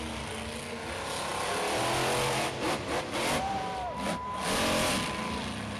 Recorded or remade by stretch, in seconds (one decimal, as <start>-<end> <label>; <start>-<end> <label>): 0.0-1.3 recorded; 1.3-4.1 remade; 4.1-5.8 recorded